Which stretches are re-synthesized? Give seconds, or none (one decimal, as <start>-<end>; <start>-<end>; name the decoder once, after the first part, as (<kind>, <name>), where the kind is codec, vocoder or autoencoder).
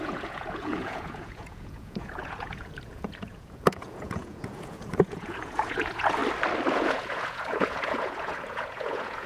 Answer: 0.0-6.2 (vocoder, Vocos); 6.7-9.3